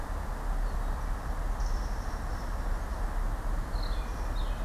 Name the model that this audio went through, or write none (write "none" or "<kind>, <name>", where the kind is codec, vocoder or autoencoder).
none